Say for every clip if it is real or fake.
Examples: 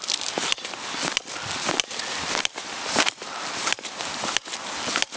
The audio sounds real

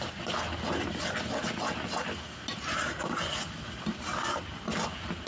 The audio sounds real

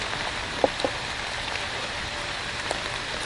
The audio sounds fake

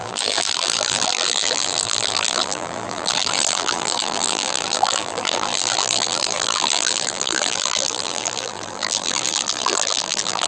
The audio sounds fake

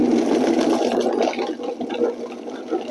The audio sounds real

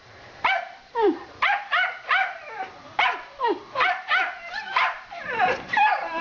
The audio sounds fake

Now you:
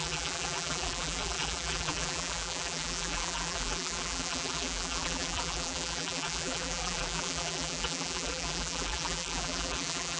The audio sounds fake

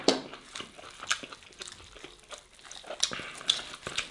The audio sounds real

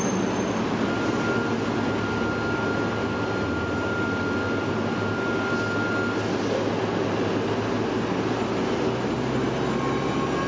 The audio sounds real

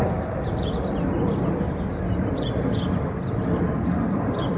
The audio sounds fake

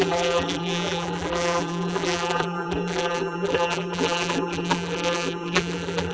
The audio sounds fake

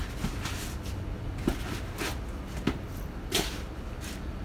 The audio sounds real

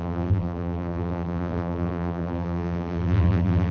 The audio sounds fake